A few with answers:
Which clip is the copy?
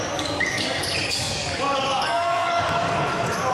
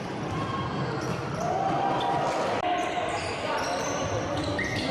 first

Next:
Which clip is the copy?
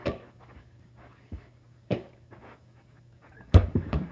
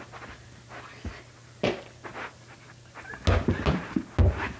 first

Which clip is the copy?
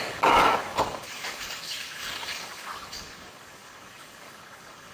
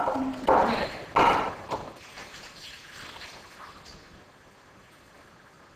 first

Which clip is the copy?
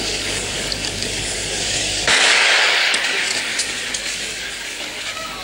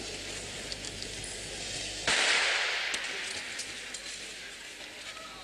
first